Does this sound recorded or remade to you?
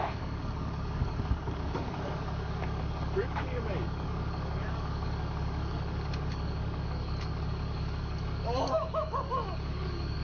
remade